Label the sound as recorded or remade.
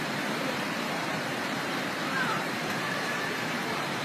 remade